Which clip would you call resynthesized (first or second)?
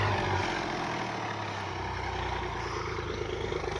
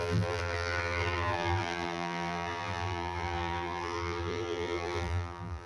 second